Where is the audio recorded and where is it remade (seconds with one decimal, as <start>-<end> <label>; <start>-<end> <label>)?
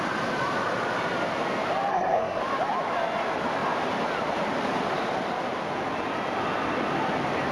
0.0-1.9 recorded; 1.9-2.4 remade; 2.4-7.5 recorded